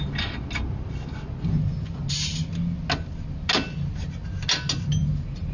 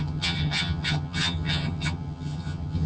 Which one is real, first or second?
first